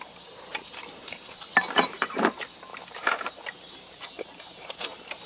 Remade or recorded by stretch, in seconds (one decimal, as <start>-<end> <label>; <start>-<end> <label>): 0.0-5.3 remade